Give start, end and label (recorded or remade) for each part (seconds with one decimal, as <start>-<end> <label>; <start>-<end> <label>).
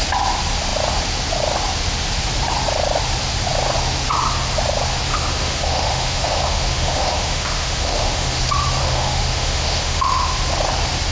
0.0-5.1 recorded; 5.1-8.4 remade; 8.4-8.8 recorded; 8.8-10.3 remade; 10.3-11.1 recorded